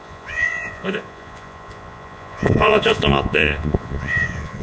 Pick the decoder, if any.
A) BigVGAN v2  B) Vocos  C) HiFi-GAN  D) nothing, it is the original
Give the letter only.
B